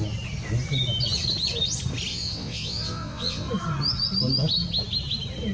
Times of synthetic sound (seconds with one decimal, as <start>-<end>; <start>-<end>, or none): 2.1-3.5